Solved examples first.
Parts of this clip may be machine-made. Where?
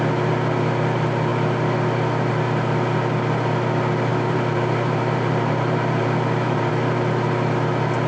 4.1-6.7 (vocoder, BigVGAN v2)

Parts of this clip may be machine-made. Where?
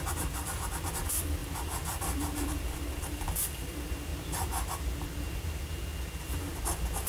0.0-4.1 (vocoder, BigVGAN v2)